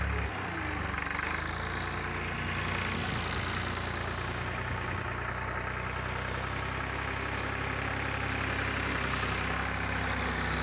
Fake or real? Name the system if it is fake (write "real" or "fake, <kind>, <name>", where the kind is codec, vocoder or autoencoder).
real